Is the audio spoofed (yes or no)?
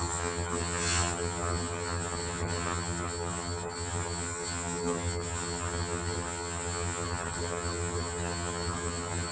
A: yes